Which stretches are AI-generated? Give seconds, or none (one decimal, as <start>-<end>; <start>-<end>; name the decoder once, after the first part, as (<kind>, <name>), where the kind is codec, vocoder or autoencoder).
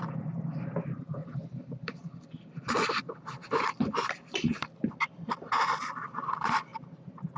0.0-7.4 (vocoder, BigVGAN v2)